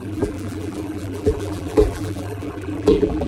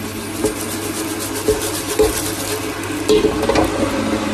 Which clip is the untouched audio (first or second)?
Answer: second